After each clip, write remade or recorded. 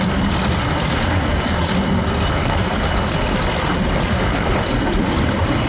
recorded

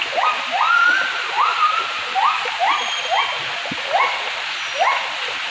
recorded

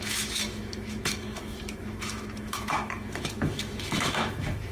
remade